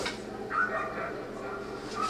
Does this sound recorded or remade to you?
recorded